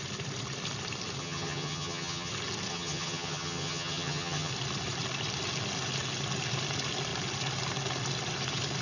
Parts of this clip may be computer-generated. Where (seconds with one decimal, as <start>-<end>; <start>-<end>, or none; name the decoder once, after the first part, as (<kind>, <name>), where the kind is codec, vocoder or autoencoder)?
1.2-2.3 (vocoder, HiFi-GAN); 2.7-4.5